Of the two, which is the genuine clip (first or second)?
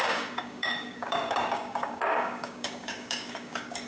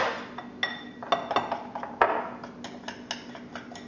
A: second